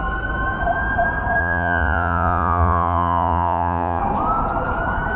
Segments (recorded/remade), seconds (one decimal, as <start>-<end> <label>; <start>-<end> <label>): 0.0-1.4 recorded; 1.4-4.0 remade; 4.0-5.2 recorded